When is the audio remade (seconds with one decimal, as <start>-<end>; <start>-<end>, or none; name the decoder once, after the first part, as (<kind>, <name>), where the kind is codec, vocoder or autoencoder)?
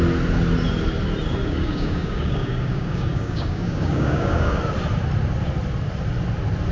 1.4-4.6 (codec, DAC)